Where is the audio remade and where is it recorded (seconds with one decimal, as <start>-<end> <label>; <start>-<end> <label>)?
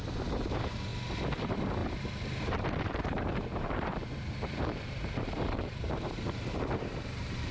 0.0-0.9 remade; 0.9-1.4 recorded; 1.4-7.5 remade